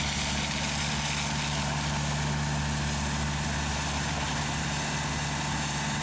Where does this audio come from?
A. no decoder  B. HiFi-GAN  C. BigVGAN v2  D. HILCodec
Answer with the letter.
A